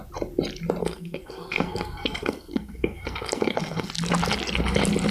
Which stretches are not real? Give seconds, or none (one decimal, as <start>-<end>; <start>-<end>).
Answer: 0.8-3.9

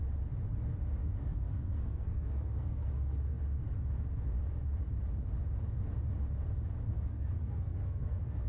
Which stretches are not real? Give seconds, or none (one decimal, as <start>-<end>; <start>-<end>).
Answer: 1.0-3.4; 6.9-8.5

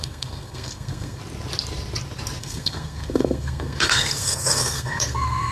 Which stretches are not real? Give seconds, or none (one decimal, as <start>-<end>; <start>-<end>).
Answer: 0.0-1.2; 2.4-5.5

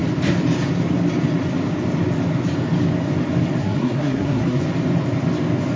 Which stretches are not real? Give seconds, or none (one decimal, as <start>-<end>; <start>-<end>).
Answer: 3.6-4.6